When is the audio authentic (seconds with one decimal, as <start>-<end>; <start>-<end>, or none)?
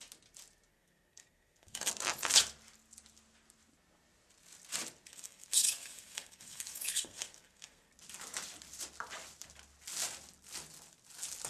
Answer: 0.0-0.7; 1.9-5.1; 7.9-11.5